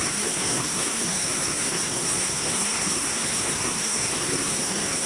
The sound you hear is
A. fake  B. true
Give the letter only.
A